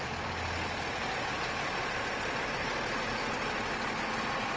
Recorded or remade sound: recorded